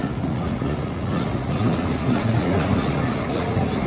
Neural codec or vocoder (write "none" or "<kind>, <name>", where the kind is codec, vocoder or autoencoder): vocoder, Vocos